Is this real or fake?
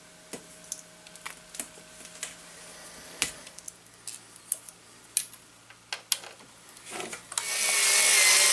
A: real